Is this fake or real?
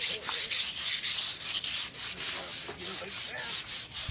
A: real